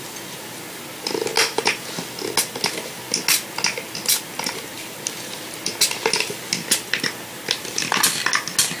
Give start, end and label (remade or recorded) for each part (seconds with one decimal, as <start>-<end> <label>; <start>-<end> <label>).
0.0-8.8 recorded